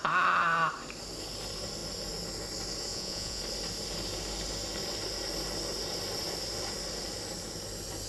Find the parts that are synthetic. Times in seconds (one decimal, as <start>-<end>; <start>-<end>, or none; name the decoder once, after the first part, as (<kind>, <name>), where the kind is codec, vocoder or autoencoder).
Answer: 2.9-3.4 (vocoder, Vocos)